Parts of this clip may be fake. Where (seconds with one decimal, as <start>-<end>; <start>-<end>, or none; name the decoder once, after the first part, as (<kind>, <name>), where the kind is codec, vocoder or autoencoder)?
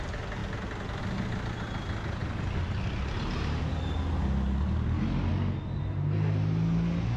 none